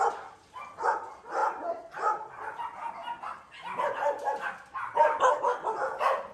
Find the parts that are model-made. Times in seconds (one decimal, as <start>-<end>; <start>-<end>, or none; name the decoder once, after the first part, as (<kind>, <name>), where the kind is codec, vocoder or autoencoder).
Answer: none